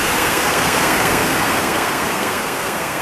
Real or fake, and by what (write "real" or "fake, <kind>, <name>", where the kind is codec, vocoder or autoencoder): fake, codec, SNAC